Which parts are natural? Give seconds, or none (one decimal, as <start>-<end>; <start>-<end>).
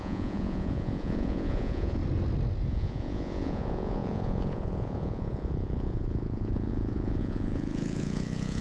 2.0-2.7